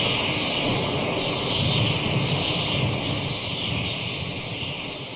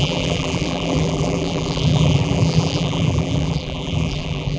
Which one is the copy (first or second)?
second